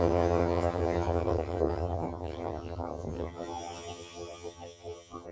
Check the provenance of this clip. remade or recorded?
remade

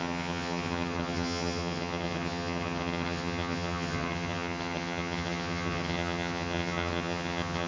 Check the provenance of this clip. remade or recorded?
remade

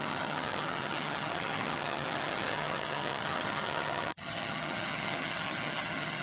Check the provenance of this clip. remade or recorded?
remade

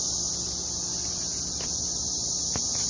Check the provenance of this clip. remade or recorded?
recorded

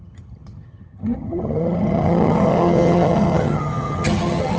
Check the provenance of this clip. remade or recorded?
remade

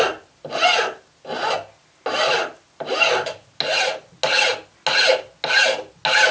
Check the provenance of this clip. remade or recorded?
recorded